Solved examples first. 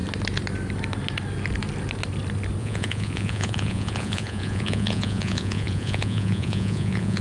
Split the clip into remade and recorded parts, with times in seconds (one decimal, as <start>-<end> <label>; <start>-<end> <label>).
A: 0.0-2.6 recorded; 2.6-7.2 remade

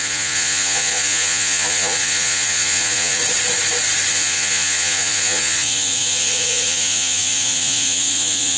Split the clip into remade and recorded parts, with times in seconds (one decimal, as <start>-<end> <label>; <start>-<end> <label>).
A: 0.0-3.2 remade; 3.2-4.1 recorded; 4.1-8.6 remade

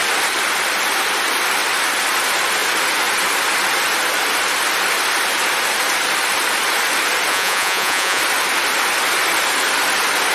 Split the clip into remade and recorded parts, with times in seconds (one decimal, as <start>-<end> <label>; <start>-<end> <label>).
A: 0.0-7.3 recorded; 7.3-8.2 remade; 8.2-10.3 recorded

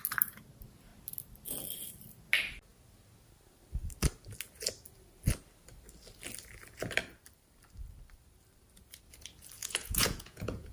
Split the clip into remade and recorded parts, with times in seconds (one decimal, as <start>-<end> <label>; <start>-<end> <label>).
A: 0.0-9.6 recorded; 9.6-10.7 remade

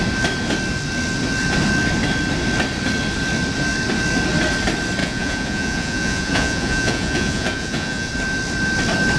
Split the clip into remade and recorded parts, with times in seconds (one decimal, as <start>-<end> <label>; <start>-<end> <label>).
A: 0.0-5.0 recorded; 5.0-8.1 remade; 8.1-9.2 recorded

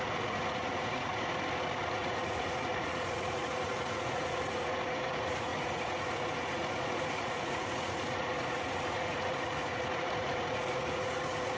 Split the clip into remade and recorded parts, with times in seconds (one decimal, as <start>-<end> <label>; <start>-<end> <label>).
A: 0.0-1.3 remade; 1.3-1.9 recorded; 1.9-11.6 remade

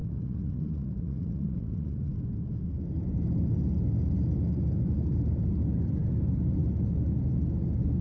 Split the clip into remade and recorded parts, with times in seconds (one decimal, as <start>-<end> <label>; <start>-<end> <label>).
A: 0.0-2.1 remade; 2.1-8.0 recorded

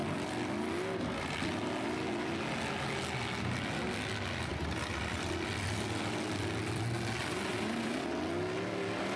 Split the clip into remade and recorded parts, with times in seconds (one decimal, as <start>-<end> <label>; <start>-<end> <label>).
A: 0.0-9.2 recorded